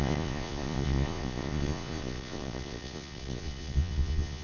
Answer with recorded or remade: remade